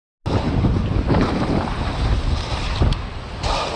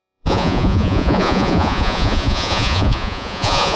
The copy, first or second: second